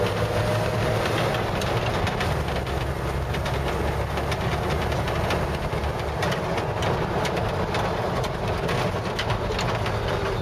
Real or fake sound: real